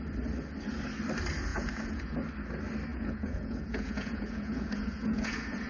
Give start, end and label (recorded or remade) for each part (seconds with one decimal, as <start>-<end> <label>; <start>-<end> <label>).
0.0-1.5 recorded; 1.5-2.1 remade; 2.1-2.9 recorded; 2.9-5.7 remade